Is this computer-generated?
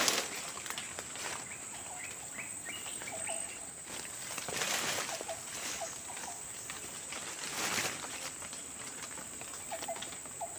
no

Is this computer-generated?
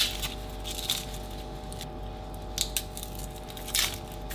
no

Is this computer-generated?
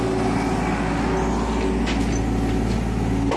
no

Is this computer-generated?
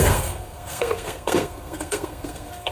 yes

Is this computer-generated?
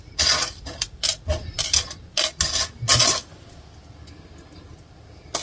no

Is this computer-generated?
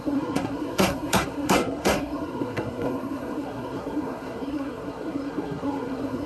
yes